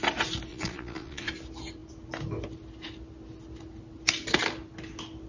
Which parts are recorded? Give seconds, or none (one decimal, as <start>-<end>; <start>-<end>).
0.0-0.5; 1.3-5.3